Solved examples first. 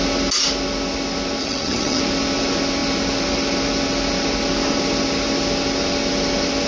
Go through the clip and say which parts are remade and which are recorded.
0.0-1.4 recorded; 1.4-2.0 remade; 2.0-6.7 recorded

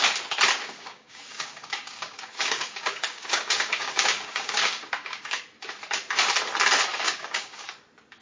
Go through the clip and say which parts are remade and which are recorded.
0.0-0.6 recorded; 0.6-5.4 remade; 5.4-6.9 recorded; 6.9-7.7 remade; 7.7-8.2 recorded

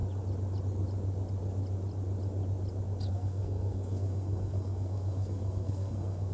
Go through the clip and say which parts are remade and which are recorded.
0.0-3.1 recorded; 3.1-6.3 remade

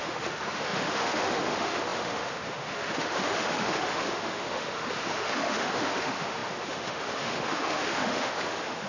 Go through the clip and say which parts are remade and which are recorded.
0.0-8.9 remade